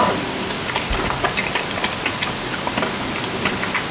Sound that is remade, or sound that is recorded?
recorded